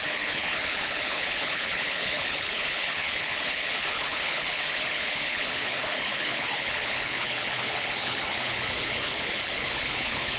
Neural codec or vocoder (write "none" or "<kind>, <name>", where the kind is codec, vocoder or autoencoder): codec, HILCodec